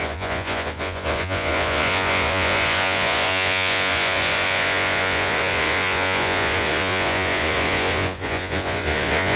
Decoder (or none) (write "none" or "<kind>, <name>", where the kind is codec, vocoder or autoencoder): vocoder, Vocos